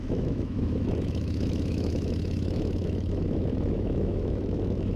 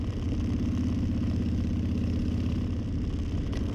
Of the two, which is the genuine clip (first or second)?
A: second